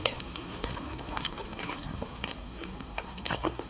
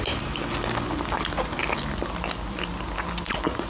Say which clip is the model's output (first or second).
first